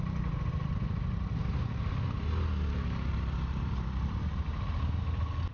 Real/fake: real